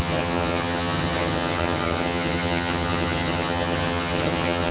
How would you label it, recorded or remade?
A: remade